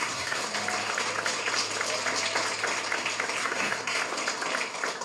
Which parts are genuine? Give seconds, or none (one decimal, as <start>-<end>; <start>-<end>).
0.4-3.4; 4.0-5.0